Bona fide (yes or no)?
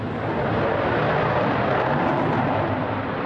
yes